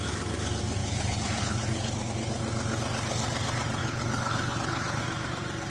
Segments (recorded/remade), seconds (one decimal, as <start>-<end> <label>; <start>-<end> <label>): 0.0-0.8 recorded; 0.8-2.1 remade; 2.1-3.8 recorded; 3.8-5.0 remade; 5.0-5.7 recorded